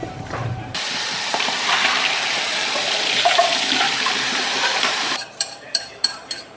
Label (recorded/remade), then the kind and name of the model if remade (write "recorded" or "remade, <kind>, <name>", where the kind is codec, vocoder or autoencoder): remade, vocoder, BigVGAN v2